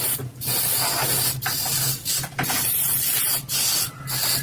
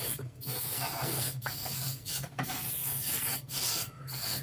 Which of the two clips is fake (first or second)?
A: second